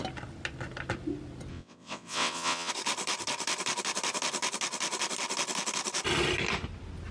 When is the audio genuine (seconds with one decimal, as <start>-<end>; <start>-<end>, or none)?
0.0-1.5; 2.7-7.1

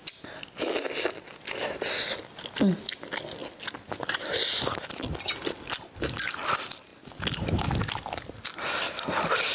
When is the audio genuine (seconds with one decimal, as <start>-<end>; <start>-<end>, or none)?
0.0-9.5

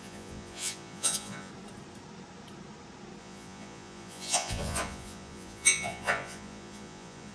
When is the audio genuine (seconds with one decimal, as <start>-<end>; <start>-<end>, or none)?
1.5-3.2

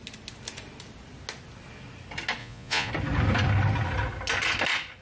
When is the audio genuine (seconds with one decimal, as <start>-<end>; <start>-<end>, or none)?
0.0-2.4; 2.9-5.0

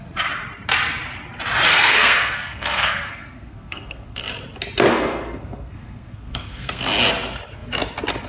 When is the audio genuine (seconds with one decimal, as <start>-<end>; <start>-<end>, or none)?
0.0-1.7; 4.2-4.9; 6.8-8.3